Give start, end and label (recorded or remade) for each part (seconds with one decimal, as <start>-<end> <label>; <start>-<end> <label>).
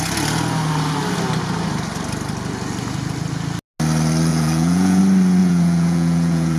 0.0-4.3 recorded; 4.3-5.0 remade; 5.0-5.4 recorded; 5.4-6.6 remade